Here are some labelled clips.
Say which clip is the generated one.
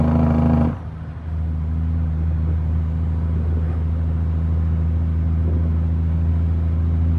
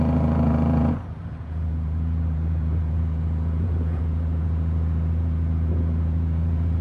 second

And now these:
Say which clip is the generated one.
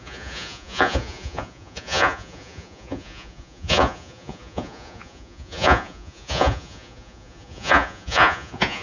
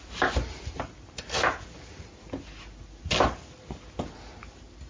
first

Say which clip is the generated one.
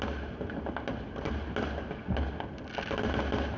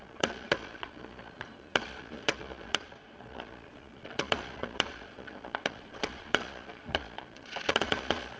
second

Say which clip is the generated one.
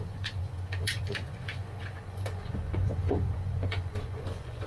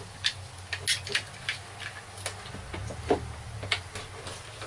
first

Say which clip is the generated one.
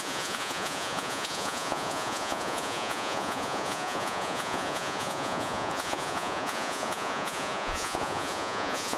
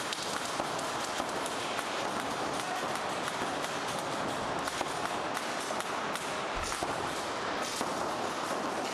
first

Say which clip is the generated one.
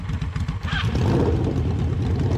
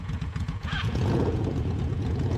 second